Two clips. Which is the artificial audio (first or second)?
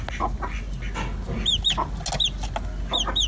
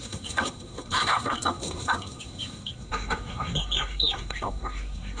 second